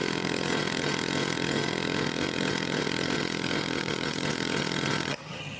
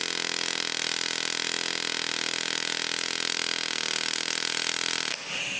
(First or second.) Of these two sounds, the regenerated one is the first